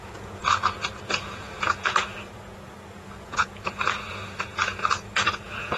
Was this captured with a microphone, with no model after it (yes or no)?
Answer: no